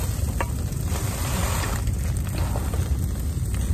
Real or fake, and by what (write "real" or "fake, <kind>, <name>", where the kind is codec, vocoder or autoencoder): real